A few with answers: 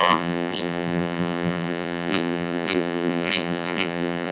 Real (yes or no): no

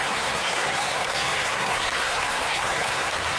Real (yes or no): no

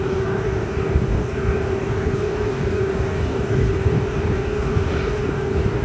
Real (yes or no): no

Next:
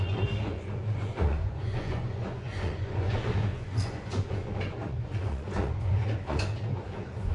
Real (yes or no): no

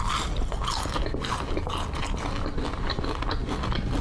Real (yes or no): yes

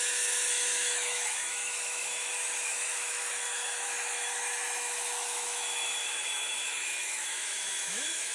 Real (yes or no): no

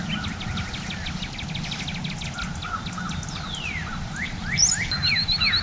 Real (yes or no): yes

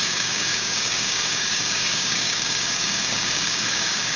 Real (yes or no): no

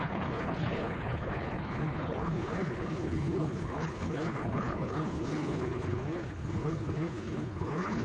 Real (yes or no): no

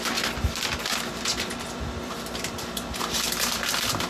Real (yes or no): no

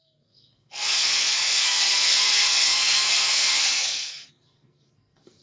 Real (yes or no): no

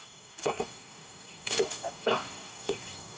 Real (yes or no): no